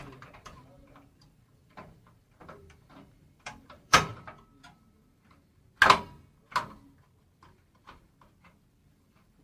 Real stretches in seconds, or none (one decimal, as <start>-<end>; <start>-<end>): 4.1-8.9